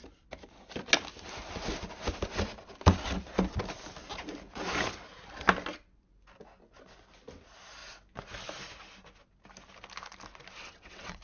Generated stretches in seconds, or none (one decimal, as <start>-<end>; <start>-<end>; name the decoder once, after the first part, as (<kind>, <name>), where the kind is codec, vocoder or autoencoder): 10.6-11.2 (vocoder, WaveNeXt)